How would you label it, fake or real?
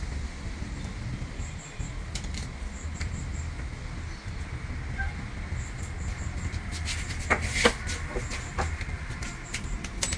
real